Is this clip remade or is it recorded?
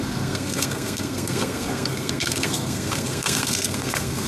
remade